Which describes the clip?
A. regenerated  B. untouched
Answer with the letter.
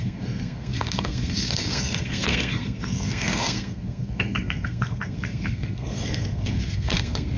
A